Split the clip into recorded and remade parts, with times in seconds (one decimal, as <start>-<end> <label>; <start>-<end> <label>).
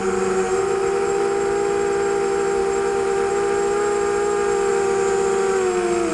0.0-1.2 remade; 1.2-2.6 recorded; 2.6-3.3 remade; 3.3-6.1 recorded